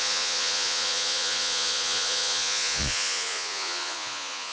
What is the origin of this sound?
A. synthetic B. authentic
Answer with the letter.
A